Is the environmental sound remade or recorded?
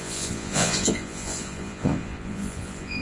remade